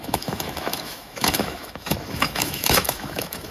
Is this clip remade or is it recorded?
remade